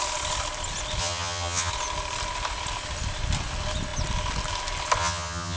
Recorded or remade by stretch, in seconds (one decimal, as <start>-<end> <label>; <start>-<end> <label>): 0.0-1.0 recorded; 1.0-1.7 remade; 1.7-5.0 recorded; 5.0-5.6 remade